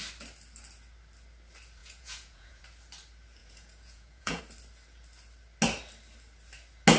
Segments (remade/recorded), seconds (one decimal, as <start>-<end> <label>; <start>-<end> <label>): 0.0-1.8 recorded; 1.8-2.6 remade; 2.6-3.4 recorded; 3.4-4.4 remade; 4.4-7.0 recorded